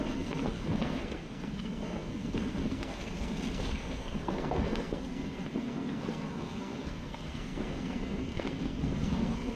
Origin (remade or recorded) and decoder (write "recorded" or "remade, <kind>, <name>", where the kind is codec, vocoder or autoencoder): remade, codec, SNAC